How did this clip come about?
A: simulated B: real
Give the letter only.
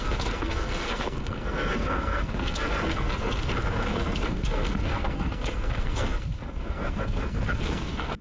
A